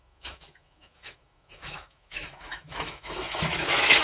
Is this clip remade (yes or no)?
yes